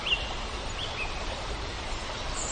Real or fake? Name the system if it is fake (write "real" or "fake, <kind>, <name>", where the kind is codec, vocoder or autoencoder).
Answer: real